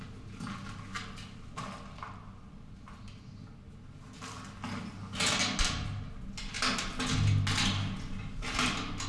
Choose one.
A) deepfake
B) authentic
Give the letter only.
B